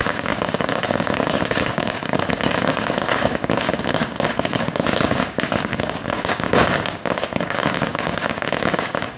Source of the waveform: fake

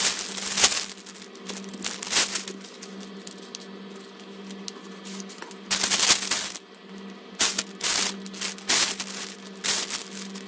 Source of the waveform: real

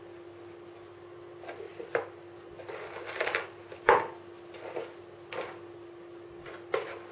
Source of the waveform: real